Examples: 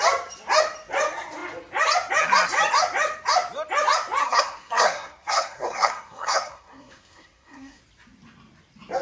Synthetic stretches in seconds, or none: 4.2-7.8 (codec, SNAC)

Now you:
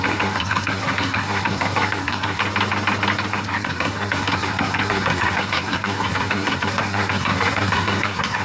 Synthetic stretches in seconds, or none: 0.0-2.4 (codec, SNAC); 3.3-8.4

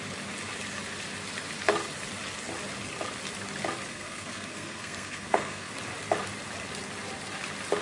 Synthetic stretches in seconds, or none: 3.9-5.7 (codec, SNAC)